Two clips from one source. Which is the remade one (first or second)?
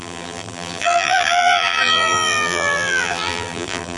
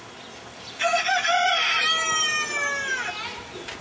first